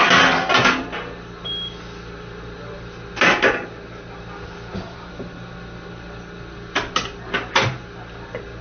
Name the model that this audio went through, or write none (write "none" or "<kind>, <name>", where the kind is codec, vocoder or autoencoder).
none